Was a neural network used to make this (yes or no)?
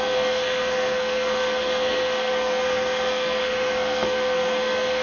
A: yes